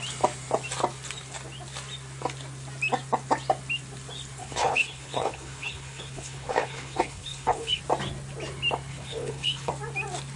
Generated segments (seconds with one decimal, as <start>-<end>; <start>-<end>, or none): 4.4-7.8; 8.9-9.7